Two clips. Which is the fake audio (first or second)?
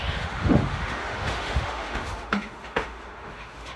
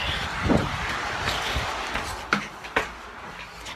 first